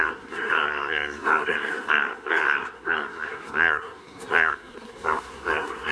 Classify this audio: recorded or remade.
remade